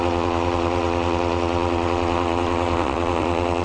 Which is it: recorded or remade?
remade